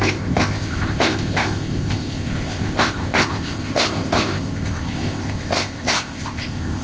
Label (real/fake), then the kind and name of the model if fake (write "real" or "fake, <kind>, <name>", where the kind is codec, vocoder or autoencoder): fake, codec, ZipCodec